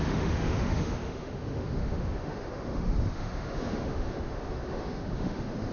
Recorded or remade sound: remade